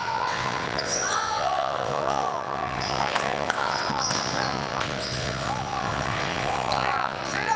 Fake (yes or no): yes